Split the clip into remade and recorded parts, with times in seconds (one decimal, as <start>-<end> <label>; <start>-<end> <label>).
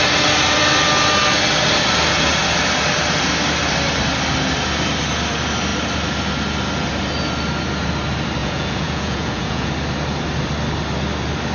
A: 0.0-8.4 recorded; 8.4-9.7 remade; 9.7-11.5 recorded